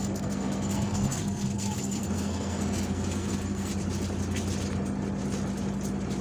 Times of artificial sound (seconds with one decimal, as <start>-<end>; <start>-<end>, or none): 0.0-3.7